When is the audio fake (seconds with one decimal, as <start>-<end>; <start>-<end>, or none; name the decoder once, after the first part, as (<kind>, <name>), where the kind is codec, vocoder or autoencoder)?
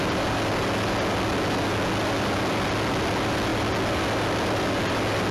none